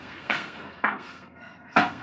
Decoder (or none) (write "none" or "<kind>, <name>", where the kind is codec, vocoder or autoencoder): codec, SNAC